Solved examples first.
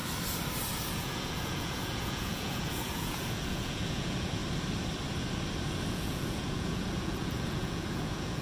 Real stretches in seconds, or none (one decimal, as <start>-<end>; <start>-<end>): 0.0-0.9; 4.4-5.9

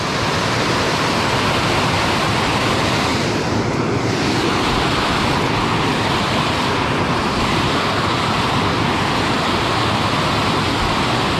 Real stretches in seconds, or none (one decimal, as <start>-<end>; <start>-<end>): 0.0-11.4

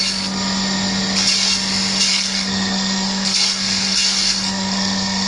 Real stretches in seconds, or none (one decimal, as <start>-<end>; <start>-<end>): 0.0-2.1

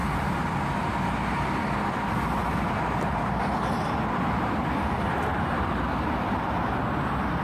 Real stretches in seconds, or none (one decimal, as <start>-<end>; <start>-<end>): 0.0-2.4; 6.8-7.4

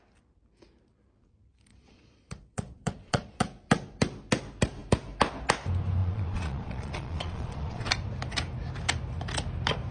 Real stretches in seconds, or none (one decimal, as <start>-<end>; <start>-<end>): 0.0-1.7; 3.4-6.0; 7.9-9.9

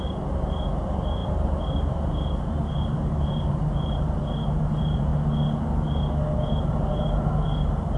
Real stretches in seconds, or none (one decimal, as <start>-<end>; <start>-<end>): 5.1-6.7

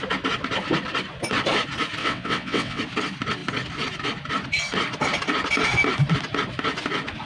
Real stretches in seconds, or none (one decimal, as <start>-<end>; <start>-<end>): 0.0-2.0; 2.8-7.3